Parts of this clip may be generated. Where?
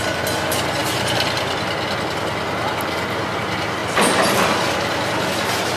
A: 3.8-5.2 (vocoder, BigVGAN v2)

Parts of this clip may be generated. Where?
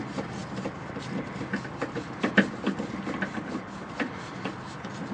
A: 0.0-0.4 (vocoder, BigVGAN v2); 3.5-5.1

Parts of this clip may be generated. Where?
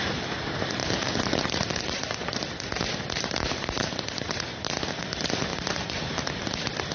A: 0.0-5.5 (vocoder, BigVGAN v2); 6.2-6.9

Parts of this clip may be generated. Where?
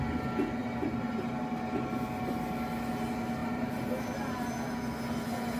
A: 0.6-1.3 (vocoder, BigVGAN v2); 3.4-4.0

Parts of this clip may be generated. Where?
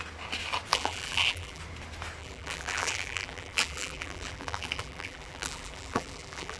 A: 0.7-1.6 (vocoder, BigVGAN v2); 2.2-6.6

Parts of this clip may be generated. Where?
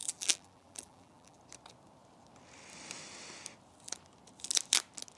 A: 0.0-1.4 (vocoder, BigVGAN v2)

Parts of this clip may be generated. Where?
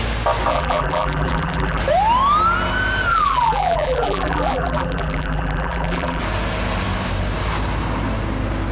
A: 0.5-1.8 (vocoder, BigVGAN v2); 3.1-6.2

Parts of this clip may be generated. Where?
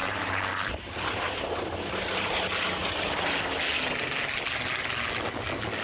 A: 0.0-1.5 (vocoder, BigVGAN v2)